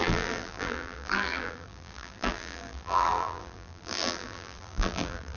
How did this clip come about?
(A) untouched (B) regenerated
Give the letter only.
B